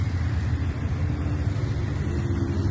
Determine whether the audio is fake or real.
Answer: real